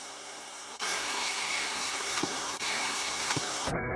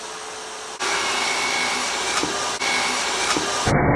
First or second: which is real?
second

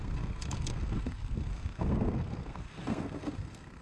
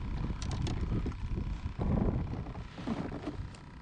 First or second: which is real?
second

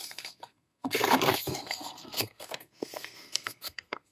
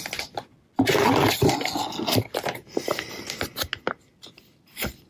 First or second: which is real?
second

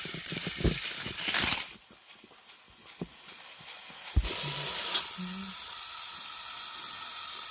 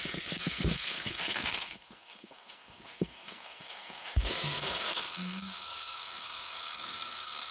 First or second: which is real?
first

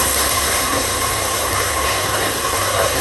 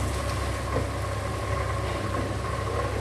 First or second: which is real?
second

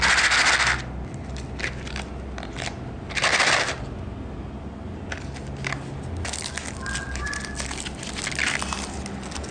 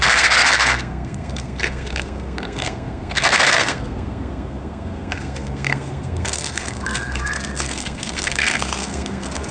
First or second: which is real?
first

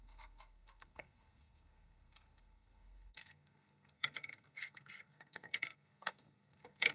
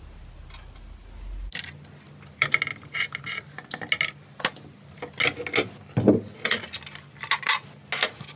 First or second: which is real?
second